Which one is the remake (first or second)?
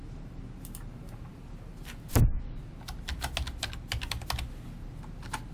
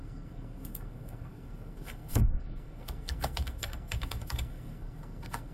second